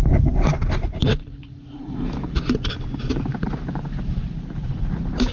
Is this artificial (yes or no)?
yes